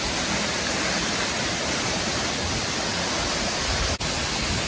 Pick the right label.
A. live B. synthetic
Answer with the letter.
A